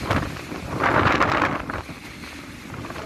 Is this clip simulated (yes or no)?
no